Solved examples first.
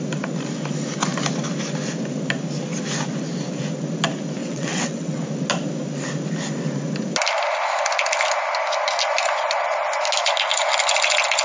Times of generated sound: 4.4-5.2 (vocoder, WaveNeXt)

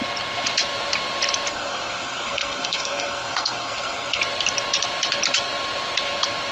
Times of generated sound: 1.5-4.2 (codec, SNAC)

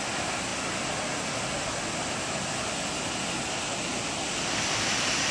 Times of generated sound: none

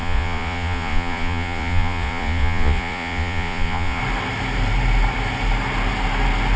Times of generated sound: 0.0-4.0 (vocoder, Vocos)

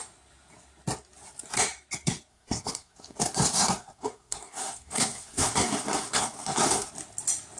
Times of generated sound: 2.3-6.9 (codec, SNAC)

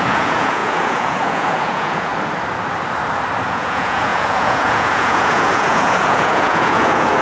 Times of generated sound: 0.0-2.1 (vocoder, Vocos); 3.4-7.2

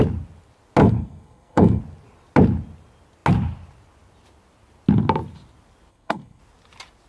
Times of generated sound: 0.8-1.8 (codec, SNAC); 5.9-6.4

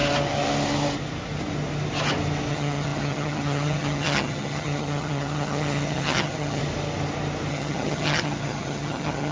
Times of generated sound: 2.5-6.6 (vocoder, HiFi-GAN); 7.5-9.3